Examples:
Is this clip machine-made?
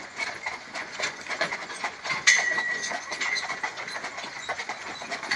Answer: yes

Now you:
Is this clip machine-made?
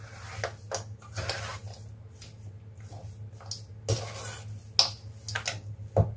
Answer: no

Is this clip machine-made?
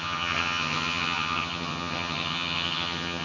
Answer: yes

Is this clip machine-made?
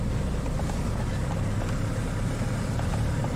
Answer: no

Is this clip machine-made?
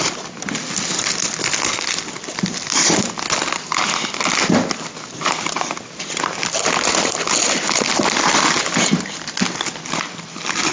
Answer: no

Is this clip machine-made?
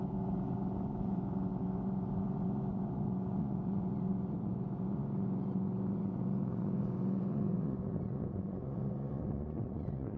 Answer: yes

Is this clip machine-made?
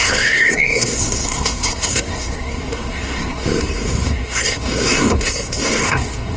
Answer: yes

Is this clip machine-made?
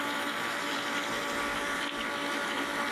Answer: no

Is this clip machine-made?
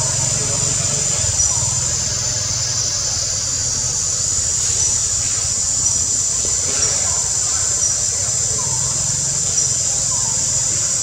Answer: no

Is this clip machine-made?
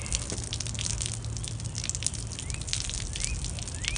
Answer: no